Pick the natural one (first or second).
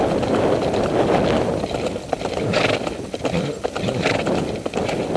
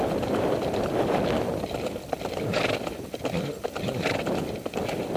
first